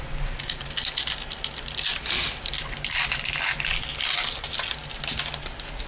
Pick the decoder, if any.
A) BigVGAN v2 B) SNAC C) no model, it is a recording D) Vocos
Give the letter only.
C